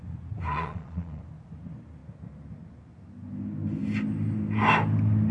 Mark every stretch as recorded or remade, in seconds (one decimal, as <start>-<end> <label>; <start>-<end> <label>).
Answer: 0.0-0.5 recorded; 0.5-1.2 remade; 1.2-5.3 recorded